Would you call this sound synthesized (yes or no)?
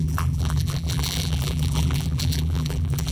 yes